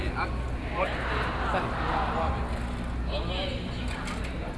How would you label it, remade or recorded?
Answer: recorded